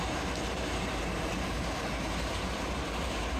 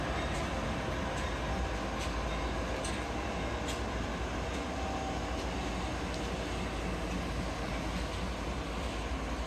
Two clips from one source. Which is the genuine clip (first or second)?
second